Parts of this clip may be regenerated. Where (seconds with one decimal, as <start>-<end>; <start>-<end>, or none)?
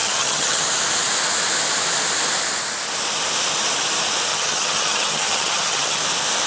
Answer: 0.0-0.6; 4.3-6.0